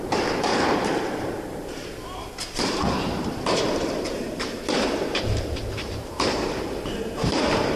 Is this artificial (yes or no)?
yes